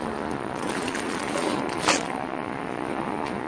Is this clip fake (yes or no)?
yes